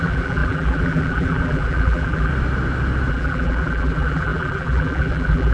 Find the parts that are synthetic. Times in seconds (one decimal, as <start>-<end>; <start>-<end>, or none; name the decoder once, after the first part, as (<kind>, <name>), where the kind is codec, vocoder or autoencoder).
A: 0.0-2.3 (vocoder, BigVGAN v2); 3.1-5.5